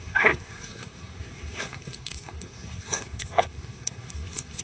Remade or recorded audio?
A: remade